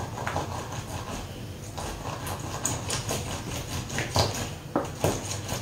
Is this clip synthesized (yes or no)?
no